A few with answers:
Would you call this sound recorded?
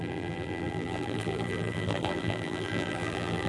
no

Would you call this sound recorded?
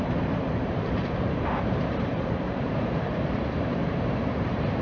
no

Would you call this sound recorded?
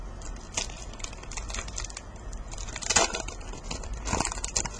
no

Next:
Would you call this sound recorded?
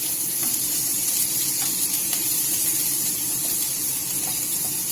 no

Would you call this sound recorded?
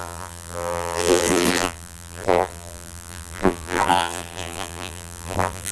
no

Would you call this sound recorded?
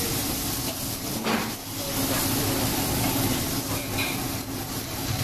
yes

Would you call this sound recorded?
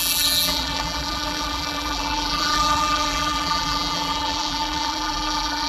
no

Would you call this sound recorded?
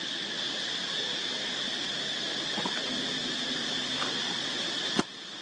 yes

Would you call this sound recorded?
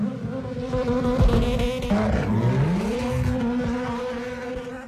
yes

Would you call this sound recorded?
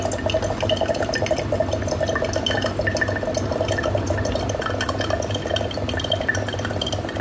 yes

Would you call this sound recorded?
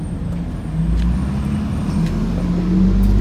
yes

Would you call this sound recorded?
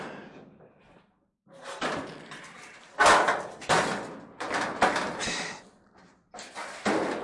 no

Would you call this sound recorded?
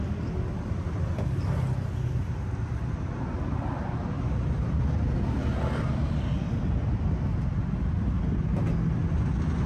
yes